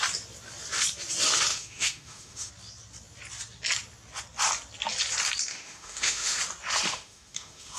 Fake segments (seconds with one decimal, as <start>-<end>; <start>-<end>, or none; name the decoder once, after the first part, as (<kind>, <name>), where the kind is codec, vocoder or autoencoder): 1.5-2.5 (autoencoder, DAC-VAE); 5.5-6.4; 6.9-7.8